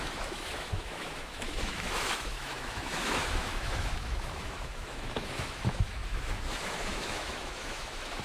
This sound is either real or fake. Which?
fake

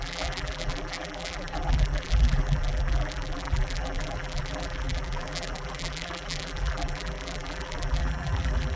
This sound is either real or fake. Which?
fake